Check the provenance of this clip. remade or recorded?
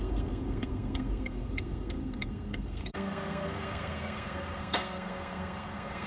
remade